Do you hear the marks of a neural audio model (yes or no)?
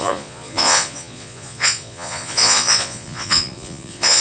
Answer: yes